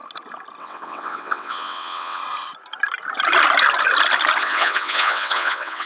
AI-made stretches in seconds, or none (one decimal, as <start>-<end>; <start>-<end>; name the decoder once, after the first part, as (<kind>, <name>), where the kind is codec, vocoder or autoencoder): 0.6-2.2 (vocoder, WaveNeXt); 4.4-5.9